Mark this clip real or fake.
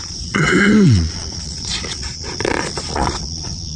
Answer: fake